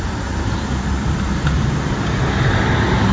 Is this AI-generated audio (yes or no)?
no